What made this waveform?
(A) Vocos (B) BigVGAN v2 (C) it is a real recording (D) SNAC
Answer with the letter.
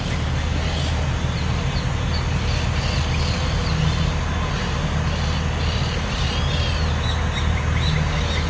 C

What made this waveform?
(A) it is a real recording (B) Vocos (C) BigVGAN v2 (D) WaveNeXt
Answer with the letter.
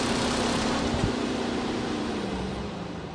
C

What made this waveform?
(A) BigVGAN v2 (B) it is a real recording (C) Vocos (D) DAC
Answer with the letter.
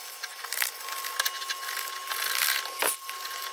B